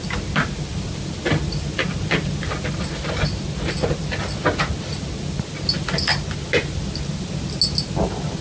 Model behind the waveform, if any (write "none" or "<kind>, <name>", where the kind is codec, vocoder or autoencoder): none